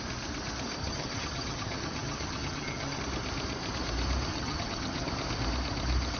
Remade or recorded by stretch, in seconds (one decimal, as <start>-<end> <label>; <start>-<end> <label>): 0.0-0.8 recorded; 0.8-3.0 remade; 3.0-4.3 recorded; 4.3-5.1 remade; 5.1-6.2 recorded

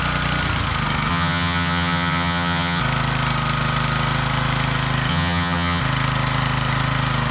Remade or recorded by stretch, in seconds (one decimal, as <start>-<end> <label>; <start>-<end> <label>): 0.0-1.1 recorded; 1.1-2.8 remade; 2.8-5.1 recorded; 5.1-5.8 remade; 5.8-7.3 recorded

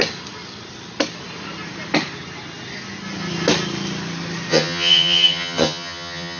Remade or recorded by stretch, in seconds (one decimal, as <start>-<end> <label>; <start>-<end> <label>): 0.0-4.5 recorded; 4.5-6.4 remade

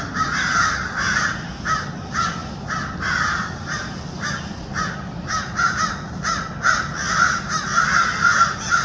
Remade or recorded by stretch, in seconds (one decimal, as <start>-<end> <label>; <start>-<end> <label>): 0.0-8.8 recorded

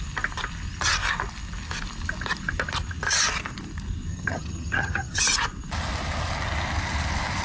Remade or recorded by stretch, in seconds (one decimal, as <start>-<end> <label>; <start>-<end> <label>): 0.0-4.1 recorded; 4.1-5.2 remade; 5.2-7.4 recorded

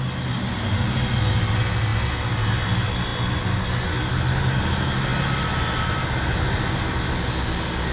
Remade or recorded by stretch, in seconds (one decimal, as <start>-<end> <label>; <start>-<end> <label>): 0.0-7.9 recorded

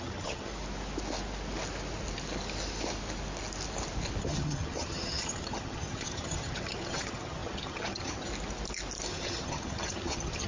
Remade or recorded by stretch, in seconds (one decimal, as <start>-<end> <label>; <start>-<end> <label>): 0.0-0.5 remade; 0.5-4.2 recorded; 4.2-8.3 remade; 8.3-9.1 recorded; 9.1-10.5 remade